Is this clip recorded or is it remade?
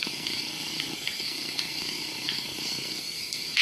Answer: remade